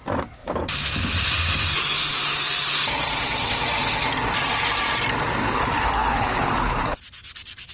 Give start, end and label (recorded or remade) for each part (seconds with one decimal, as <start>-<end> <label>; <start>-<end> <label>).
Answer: 0.0-5.4 recorded; 5.4-7.0 remade; 7.0-7.7 recorded

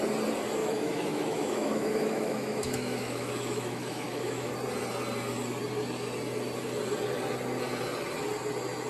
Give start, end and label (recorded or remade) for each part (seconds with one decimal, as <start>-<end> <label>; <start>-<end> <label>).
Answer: 0.0-0.6 recorded; 0.6-4.5 remade; 4.5-8.9 recorded

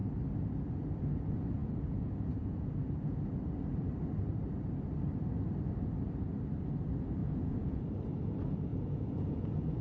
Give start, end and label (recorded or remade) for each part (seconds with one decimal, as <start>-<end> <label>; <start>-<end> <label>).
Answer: 0.0-1.6 recorded; 1.6-3.4 remade; 3.4-7.2 recorded; 7.2-7.8 remade; 7.8-8.7 recorded; 8.7-9.8 remade

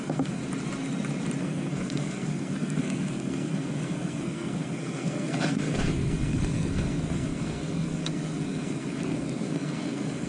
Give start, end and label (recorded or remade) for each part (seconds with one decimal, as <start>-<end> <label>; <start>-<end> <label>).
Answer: 0.0-0.4 remade; 0.4-1.4 recorded; 1.4-10.3 remade

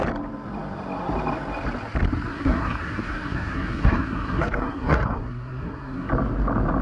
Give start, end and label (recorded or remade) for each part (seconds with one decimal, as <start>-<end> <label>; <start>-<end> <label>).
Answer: 0.0-2.3 recorded; 2.3-6.1 remade; 6.1-6.8 recorded

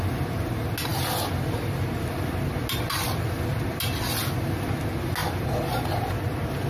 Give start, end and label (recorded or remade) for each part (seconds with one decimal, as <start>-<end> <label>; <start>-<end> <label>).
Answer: 0.0-6.7 recorded

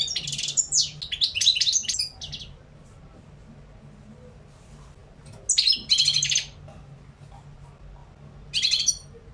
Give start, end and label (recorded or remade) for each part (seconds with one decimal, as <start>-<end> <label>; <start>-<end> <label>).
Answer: 0.0-9.3 recorded